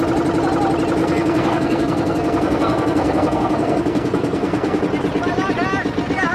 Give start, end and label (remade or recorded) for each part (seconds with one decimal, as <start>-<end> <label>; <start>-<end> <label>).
0.0-1.0 recorded; 1.0-4.8 remade; 4.8-6.3 recorded